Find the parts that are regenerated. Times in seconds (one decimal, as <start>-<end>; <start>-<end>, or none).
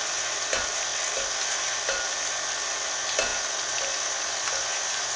none